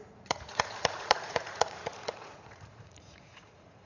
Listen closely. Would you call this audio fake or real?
fake